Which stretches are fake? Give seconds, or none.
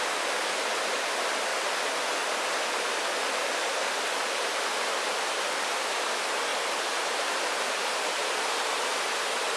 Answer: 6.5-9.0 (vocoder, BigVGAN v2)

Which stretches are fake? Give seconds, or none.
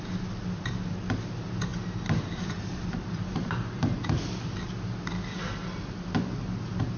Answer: 1.7-4.1 (vocoder, BigVGAN v2)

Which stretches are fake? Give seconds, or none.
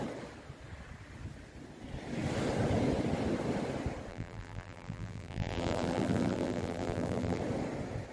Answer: 4.1-7.4 (vocoder, BigVGAN v2)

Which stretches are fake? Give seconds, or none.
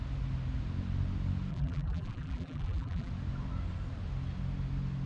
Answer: 1.5-3.1 (vocoder, BigVGAN v2)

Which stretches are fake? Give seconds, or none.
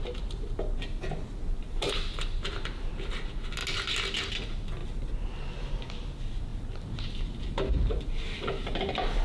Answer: 1.6-2.9 (vocoder, BigVGAN v2)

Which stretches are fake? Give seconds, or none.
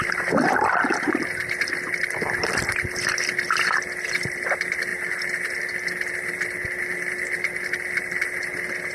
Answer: 0.0-4.9 (vocoder, BigVGAN v2); 6.1-8.9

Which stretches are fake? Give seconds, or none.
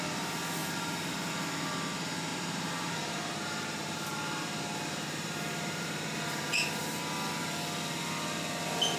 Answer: 0.6-1.3 (vocoder, BigVGAN v2); 2.3-7.0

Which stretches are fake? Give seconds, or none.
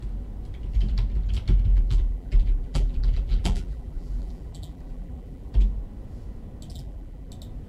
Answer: 1.7-5.5 (vocoder, BigVGAN v2); 6.7-7.3